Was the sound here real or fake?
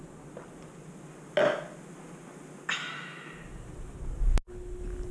real